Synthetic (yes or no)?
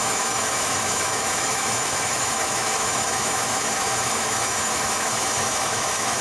yes